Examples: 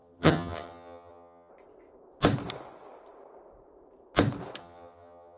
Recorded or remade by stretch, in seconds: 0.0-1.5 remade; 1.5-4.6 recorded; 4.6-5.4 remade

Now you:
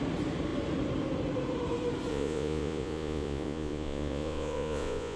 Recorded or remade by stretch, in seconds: 0.0-2.1 recorded; 2.1-5.2 remade

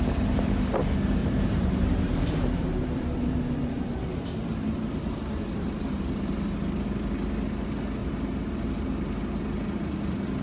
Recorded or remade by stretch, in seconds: 0.0-1.2 recorded; 1.2-6.3 remade; 6.3-8.0 recorded; 8.0-9.4 remade; 9.4-10.4 recorded

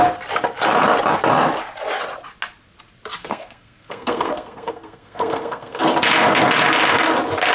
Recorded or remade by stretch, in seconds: 0.0-3.2 recorded; 3.2-5.8 remade; 5.8-7.5 recorded

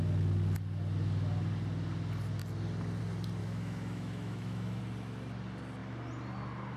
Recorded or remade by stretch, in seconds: 0.0-3.4 recorded; 3.4-4.8 remade; 4.8-6.8 recorded

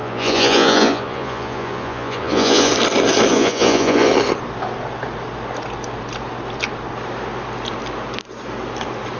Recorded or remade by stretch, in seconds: 0.0-2.7 remade; 2.7-3.3 recorded; 3.3-4.1 remade; 4.1-9.2 recorded